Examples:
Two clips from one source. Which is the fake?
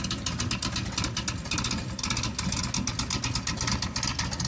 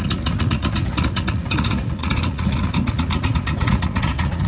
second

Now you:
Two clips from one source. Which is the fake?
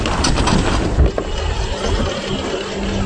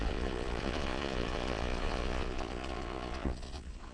second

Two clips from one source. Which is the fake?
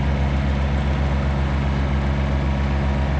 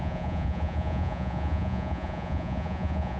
second